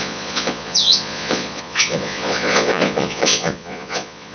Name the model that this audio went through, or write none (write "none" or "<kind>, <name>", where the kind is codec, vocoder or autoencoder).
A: vocoder, Vocos